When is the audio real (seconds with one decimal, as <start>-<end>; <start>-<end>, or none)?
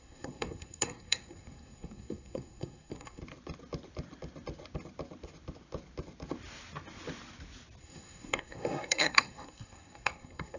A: 3.2-7.8